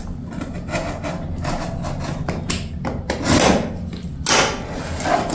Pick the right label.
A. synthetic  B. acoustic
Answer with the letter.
B